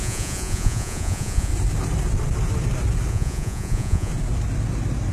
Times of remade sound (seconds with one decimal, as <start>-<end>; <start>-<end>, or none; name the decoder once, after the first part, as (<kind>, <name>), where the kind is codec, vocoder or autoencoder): 0.0-1.5 (vocoder, Vocos); 3.1-4.1